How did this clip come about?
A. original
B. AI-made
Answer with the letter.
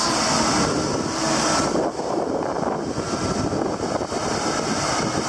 A